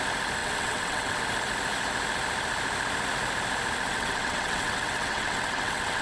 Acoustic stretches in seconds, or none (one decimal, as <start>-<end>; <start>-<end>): 0.0-0.4; 1.2-3.9